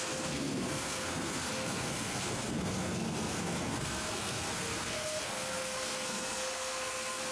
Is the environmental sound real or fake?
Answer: fake